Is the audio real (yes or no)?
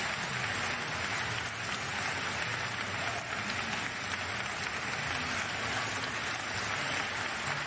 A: yes